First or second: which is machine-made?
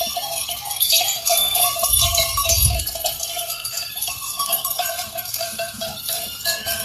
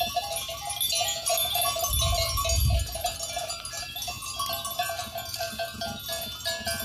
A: first